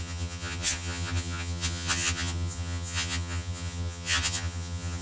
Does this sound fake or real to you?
fake